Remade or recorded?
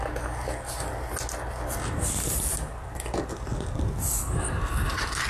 recorded